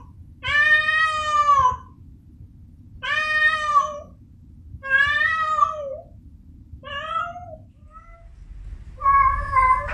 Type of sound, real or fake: real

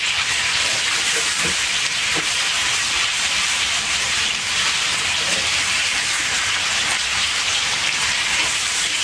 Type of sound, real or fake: fake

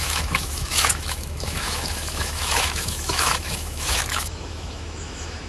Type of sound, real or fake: fake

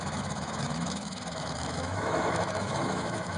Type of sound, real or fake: fake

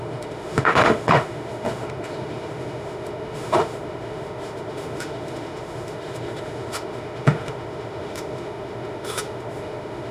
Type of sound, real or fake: fake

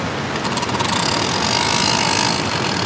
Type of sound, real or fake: real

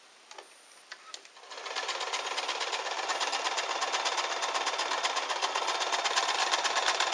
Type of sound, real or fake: real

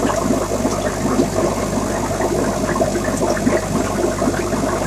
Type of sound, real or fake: real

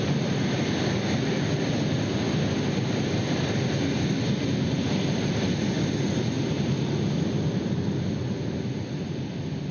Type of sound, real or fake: real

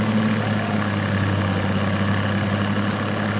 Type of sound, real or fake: real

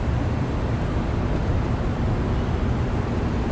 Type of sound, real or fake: real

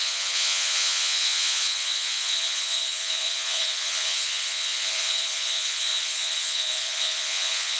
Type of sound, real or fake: fake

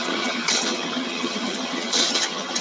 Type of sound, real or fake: fake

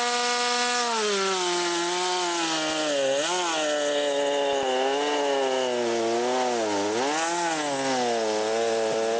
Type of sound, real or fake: real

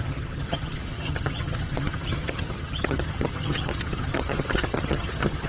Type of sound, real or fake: fake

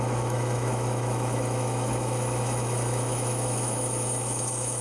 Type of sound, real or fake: fake